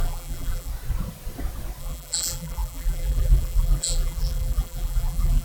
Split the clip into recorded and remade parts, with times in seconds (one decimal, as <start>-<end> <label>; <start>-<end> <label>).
0.0-0.7 remade; 0.7-1.8 recorded; 1.8-5.4 remade